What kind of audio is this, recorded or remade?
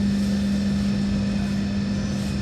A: recorded